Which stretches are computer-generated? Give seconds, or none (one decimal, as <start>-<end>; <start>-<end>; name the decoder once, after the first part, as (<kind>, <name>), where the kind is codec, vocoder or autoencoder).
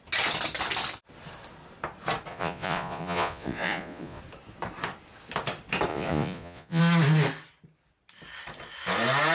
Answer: 2.3-4.2 (vocoder, Vocos); 5.9-6.8